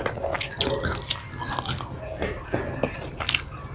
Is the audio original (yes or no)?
yes